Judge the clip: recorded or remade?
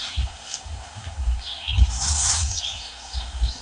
remade